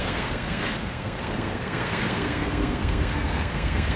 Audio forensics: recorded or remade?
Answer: remade